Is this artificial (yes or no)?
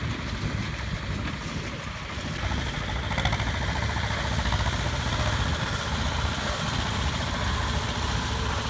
no